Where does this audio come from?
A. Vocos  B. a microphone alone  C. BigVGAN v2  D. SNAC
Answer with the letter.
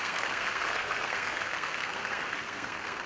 D